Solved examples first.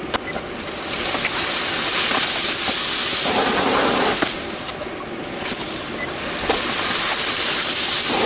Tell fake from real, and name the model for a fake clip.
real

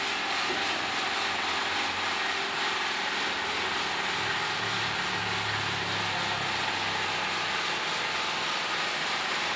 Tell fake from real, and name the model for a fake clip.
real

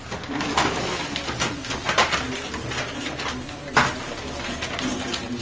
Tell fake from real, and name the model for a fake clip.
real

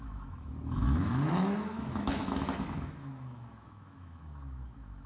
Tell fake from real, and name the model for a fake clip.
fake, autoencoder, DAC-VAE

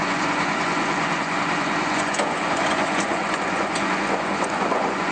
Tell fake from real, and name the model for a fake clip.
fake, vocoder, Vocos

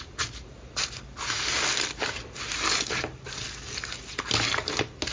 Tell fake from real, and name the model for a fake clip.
real